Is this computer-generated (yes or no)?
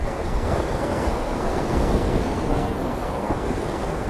yes